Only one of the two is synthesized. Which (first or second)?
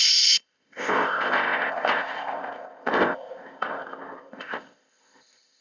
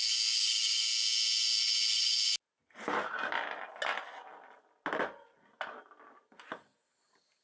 first